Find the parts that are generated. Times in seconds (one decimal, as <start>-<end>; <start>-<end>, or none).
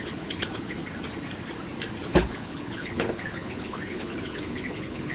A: 0.0-0.8; 2.1-5.1